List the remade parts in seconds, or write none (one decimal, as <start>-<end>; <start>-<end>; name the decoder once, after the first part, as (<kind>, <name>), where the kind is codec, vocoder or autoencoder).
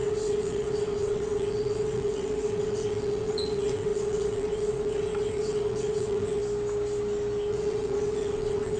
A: 0.0-6.4 (vocoder, WaveNeXt); 7.5-8.8